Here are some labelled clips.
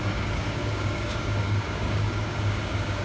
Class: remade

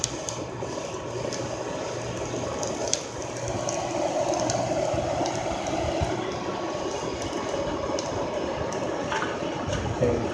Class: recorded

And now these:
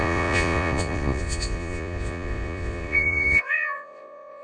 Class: remade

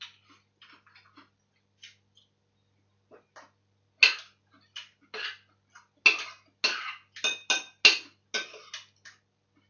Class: recorded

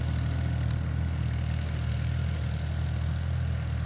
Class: recorded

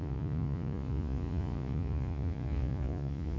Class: remade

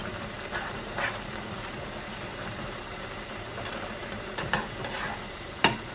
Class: remade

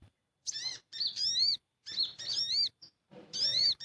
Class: remade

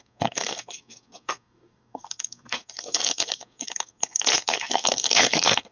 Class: remade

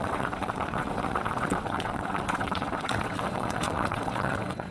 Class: remade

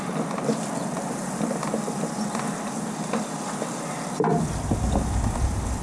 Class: recorded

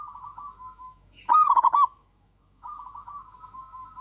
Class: remade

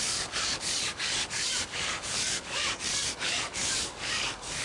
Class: remade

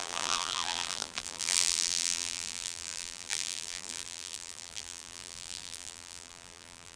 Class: remade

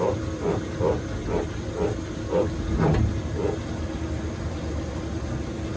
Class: recorded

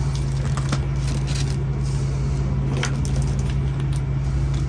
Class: recorded